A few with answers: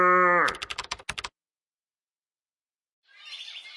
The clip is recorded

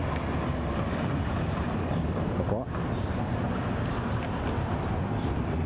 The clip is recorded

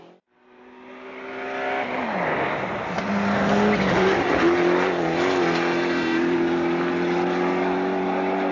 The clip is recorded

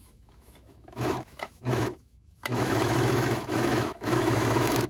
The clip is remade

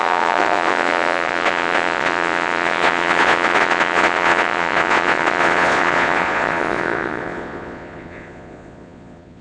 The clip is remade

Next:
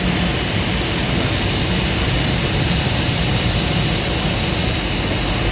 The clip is recorded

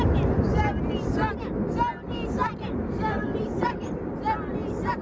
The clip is recorded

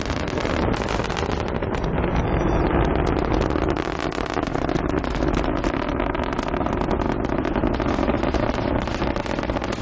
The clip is recorded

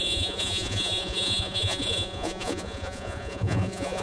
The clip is remade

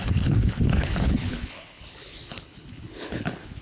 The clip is remade